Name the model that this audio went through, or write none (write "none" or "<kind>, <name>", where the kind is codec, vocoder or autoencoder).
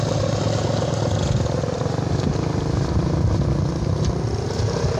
none